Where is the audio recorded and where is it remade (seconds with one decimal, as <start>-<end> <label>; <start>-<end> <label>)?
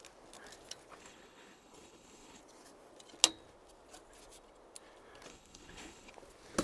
0.0-1.0 recorded; 1.0-2.4 remade; 2.4-5.3 recorded; 5.3-6.1 remade; 6.1-6.6 recorded